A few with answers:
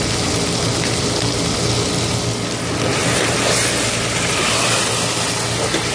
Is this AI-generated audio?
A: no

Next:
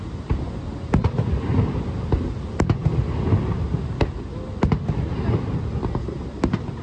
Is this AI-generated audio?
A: no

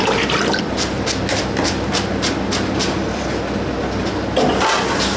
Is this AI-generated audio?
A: no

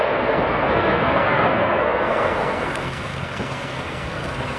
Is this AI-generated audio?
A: yes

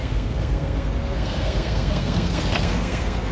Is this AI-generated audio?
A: yes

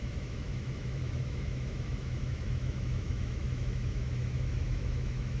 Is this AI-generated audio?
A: yes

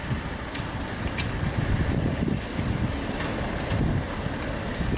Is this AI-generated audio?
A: no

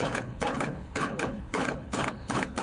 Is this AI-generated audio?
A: yes